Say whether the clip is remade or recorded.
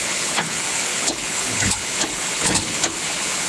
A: remade